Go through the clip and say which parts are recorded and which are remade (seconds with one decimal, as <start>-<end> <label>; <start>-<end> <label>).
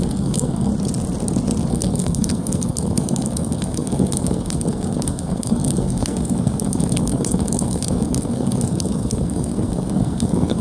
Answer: 0.0-0.7 remade; 0.7-1.7 recorded; 1.7-10.6 remade